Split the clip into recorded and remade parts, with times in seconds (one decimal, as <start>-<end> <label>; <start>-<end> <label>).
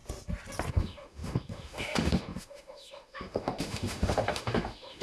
0.0-0.7 recorded; 0.7-5.0 remade